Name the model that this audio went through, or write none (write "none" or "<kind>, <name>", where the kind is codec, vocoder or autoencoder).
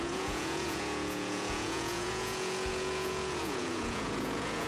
vocoder, Vocos